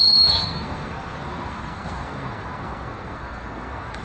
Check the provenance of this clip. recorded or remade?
remade